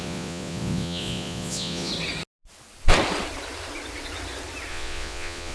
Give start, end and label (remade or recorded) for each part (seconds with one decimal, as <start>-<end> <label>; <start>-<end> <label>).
0.0-1.9 remade; 1.9-4.7 recorded; 4.7-5.5 remade